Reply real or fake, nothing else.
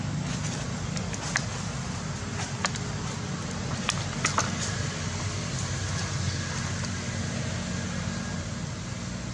real